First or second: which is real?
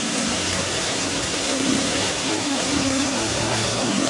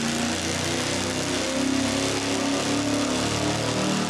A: second